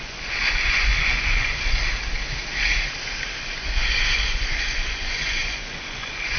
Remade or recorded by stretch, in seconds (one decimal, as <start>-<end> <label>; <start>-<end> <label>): 0.0-1.8 remade; 1.8-3.4 recorded; 3.4-6.4 remade